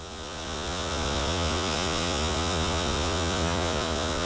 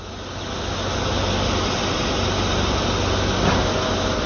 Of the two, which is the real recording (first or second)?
second